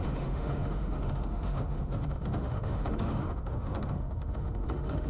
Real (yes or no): no